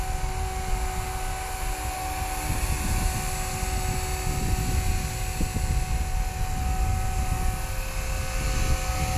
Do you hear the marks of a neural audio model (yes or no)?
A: no